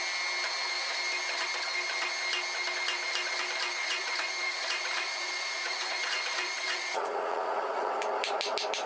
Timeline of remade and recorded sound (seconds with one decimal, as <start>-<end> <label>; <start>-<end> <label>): 0.0-3.8 recorded; 3.8-7.9 remade; 7.9-8.9 recorded